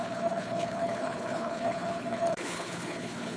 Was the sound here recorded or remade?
remade